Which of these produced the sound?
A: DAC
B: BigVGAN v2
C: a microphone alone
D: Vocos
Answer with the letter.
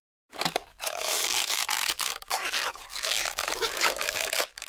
A